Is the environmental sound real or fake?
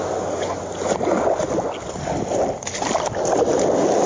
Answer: real